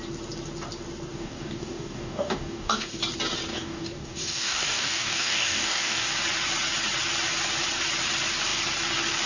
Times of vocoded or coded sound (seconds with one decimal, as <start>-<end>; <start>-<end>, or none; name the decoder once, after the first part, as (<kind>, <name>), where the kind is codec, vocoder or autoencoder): 1.1-3.0 (codec, DAC); 3.5-6.1